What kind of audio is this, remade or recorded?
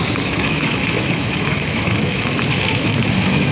remade